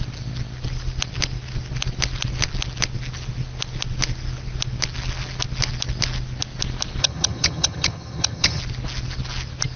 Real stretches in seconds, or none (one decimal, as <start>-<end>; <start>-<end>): 0.0-7.0; 8.6-9.8